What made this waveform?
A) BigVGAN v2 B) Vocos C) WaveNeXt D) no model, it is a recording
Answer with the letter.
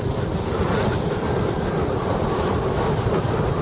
D